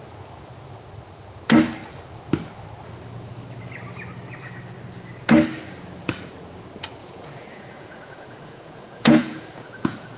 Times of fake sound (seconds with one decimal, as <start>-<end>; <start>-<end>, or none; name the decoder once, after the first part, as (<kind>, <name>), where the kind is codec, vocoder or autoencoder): 7.0-10.2 (vocoder, Vocos)